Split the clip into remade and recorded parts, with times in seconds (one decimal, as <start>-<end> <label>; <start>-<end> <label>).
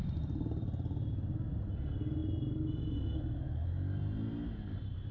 0.0-5.1 recorded